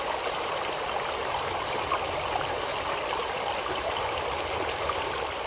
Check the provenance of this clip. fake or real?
real